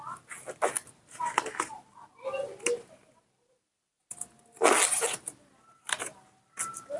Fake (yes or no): no